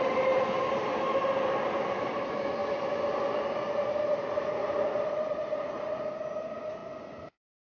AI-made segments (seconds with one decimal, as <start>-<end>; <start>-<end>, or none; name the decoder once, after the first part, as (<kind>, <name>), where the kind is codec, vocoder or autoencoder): none